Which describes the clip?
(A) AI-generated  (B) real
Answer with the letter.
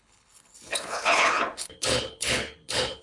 A